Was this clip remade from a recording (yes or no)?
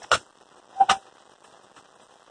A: no